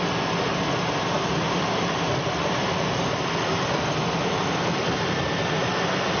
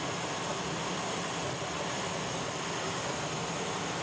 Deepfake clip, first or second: first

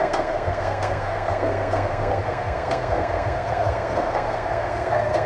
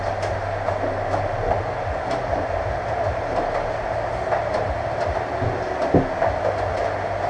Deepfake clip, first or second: first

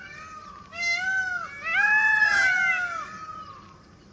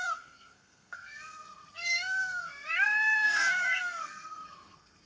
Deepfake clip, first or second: second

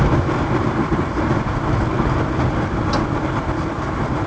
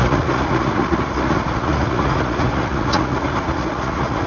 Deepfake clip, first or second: second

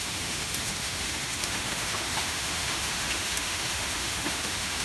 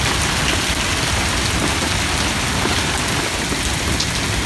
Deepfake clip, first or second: first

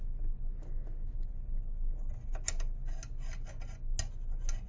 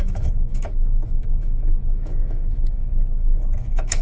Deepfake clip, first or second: second